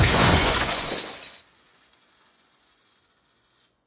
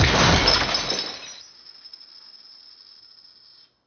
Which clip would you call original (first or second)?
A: second